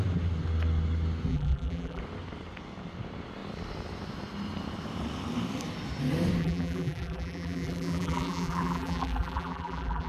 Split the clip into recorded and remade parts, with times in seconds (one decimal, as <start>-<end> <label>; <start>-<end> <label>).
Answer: 0.0-1.3 recorded; 1.3-2.0 remade; 2.0-6.4 recorded; 6.4-10.1 remade